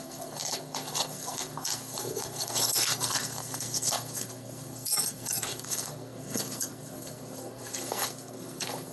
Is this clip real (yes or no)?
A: no